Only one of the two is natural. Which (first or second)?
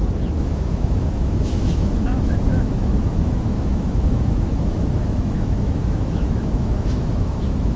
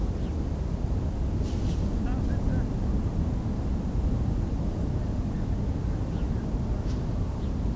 second